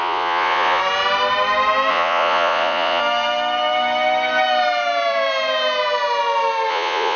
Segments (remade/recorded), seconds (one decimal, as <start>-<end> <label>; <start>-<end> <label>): 0.0-0.8 remade; 0.8-1.9 recorded; 1.9-3.0 remade; 3.0-6.7 recorded; 6.7-7.2 remade